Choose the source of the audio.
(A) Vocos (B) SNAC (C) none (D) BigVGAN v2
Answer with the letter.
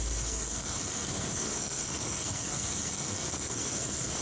B